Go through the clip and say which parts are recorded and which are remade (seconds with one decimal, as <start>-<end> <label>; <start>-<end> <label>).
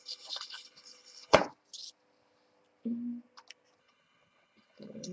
0.0-1.4 remade; 1.4-3.8 recorded; 3.8-5.1 remade